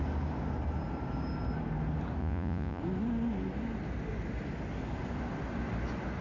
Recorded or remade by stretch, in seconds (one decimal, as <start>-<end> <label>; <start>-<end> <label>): 0.0-2.2 recorded; 2.2-2.8 remade; 2.8-6.2 recorded